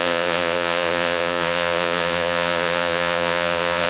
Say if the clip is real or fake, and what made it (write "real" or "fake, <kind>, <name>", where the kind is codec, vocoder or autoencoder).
fake, vocoder, Vocos